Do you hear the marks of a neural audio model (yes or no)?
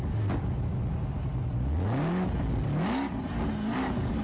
no